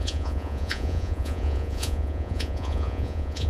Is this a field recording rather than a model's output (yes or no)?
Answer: no